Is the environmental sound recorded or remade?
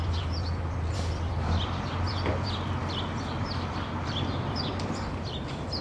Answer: remade